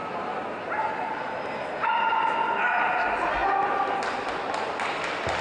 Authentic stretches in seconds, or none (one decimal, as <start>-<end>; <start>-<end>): 0.0-5.4